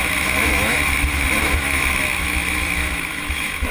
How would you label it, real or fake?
fake